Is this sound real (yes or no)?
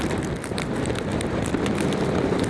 no